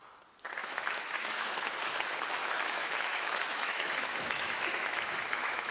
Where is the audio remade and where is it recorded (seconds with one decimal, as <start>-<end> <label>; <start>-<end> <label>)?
0.0-0.6 recorded; 0.6-1.7 remade; 1.7-2.4 recorded; 2.4-5.7 remade